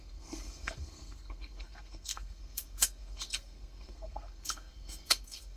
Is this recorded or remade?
remade